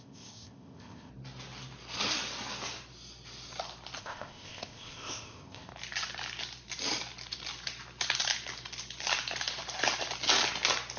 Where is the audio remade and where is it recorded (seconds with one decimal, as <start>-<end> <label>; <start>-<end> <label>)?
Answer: 0.0-1.1 remade; 1.1-4.0 recorded; 4.0-5.7 remade; 5.7-11.0 recorded